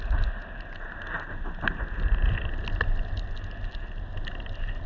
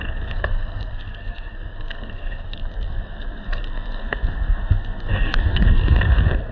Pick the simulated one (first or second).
second